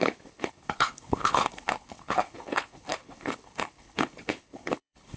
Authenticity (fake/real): fake